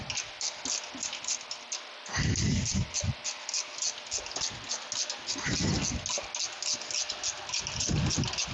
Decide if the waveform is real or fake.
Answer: real